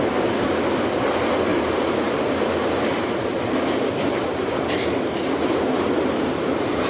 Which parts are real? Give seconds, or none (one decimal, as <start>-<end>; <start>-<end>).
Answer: 0.0-1.5; 2.3-4.2